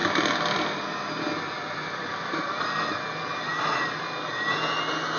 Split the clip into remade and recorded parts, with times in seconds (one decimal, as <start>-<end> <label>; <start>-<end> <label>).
0.0-2.9 remade; 2.9-3.5 recorded; 3.5-4.3 remade; 4.3-5.2 recorded